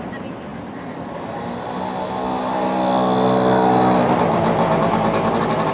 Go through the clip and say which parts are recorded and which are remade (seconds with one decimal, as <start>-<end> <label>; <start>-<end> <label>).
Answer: 0.0-5.7 recorded